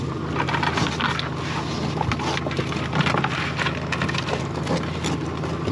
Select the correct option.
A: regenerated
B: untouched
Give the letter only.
B